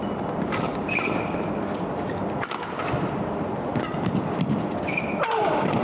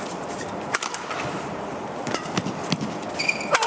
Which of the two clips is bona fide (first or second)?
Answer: first